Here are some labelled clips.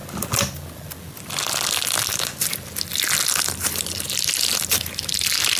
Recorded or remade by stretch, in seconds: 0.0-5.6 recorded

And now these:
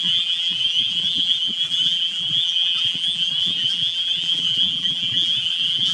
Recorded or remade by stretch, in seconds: 0.0-5.9 remade

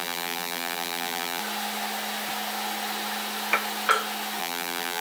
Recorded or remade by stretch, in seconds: 0.0-1.4 remade; 1.4-4.4 recorded; 4.4-5.0 remade

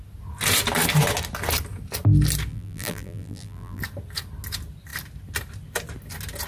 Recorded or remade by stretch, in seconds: 0.0-2.5 recorded; 2.5-3.8 remade; 3.8-6.5 recorded

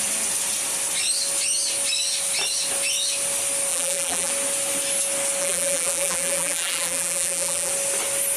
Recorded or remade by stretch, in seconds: 0.0-3.7 recorded; 3.7-4.3 remade; 4.3-5.4 recorded; 5.4-7.7 remade; 7.7-8.4 recorded

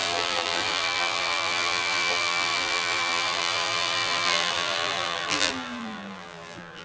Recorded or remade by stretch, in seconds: 0.0-6.8 remade